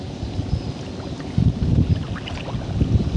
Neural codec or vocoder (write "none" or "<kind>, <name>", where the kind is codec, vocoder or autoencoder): none